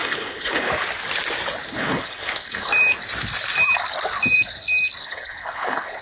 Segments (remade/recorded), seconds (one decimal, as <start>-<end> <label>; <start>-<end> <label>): 0.0-0.7 remade; 0.7-1.7 recorded; 1.7-2.7 remade; 2.7-5.0 recorded; 5.0-6.0 remade